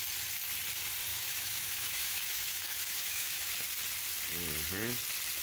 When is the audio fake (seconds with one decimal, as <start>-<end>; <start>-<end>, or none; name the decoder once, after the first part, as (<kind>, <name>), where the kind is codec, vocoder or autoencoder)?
1.1-3.5 (autoencoder, DAC-VAE)